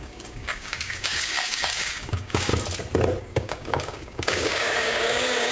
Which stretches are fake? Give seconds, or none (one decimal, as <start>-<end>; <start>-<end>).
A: 0.0-2.5; 3.2-5.5